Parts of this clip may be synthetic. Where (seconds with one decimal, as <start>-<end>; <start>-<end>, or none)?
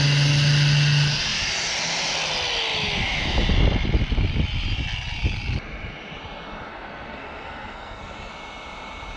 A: 6.7-8.3